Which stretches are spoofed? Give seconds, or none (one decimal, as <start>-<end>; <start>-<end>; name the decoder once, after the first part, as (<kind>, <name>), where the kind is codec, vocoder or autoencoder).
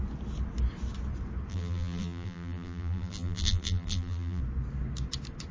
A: 1.5-4.4 (vocoder, BigVGAN v2)